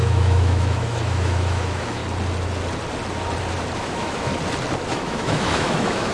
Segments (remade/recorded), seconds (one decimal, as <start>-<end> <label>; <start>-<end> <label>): 0.0-2.0 remade; 2.0-3.8 recorded; 3.8-4.3 remade; 4.3-4.9 recorded; 4.9-6.1 remade